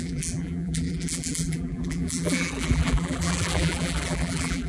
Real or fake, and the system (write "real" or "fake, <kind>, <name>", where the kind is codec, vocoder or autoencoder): fake, vocoder, BigVGAN v2